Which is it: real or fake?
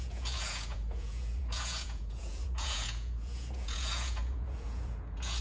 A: fake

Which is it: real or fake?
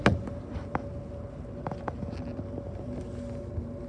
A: real